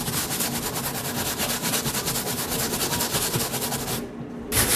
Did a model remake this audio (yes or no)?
no